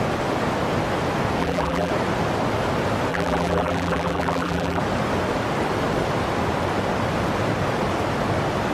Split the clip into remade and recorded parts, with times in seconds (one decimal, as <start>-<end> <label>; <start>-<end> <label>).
0.0-1.4 recorded; 1.4-1.9 remade; 1.9-3.1 recorded; 3.1-4.8 remade; 4.8-8.7 recorded